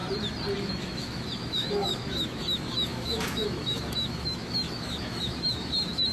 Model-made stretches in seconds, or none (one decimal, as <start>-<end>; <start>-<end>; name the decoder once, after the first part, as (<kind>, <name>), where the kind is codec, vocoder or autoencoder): 0.6-6.1 (autoencoder, DAC-VAE)